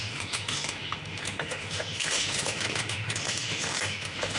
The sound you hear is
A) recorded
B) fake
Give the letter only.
B